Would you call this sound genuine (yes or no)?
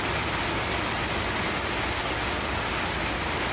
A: yes